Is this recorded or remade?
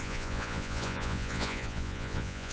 remade